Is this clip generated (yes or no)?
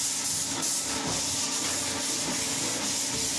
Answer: no